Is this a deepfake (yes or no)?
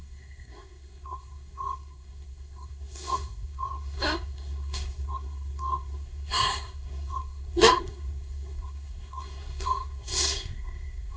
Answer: yes